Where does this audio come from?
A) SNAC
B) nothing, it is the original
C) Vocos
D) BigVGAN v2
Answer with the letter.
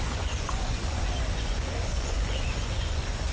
C